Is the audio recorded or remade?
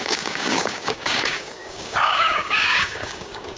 remade